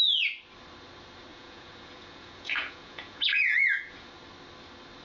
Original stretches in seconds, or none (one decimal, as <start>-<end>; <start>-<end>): 0.0-1.3; 4.1-5.0